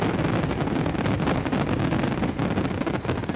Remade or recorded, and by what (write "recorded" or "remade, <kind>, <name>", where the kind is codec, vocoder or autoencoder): recorded